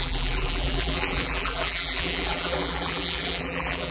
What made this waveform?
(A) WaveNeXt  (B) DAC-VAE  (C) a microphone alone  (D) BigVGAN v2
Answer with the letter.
D